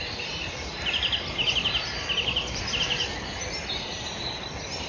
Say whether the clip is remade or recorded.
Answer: recorded